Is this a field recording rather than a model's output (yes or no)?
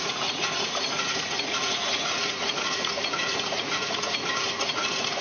no